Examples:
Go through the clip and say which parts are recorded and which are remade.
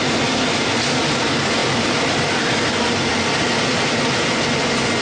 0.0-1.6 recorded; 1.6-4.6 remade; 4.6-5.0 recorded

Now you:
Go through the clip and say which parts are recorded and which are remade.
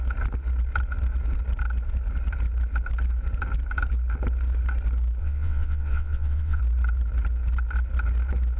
0.0-5.2 recorded; 5.2-6.6 remade; 6.6-8.6 recorded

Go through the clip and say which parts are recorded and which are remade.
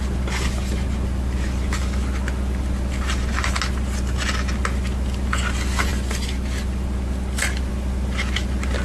0.0-8.8 recorded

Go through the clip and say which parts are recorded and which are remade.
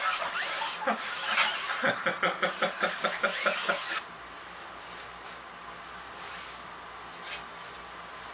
0.0-8.3 recorded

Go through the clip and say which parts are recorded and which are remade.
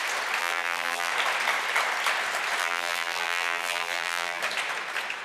0.0-0.4 recorded; 0.4-1.1 remade; 1.1-2.6 recorded; 2.6-4.4 remade; 4.4-5.2 recorded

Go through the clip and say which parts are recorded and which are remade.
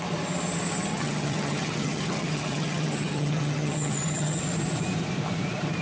0.0-0.9 recorded; 0.9-4.4 remade; 4.4-5.8 recorded